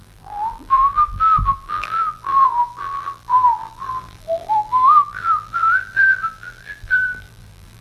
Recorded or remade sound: remade